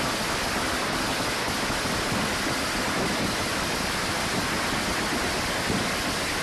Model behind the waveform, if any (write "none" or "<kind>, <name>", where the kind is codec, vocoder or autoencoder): none